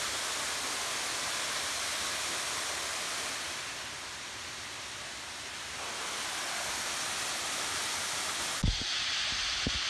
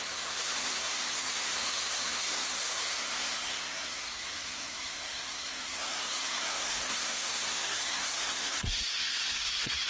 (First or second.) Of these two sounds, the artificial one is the second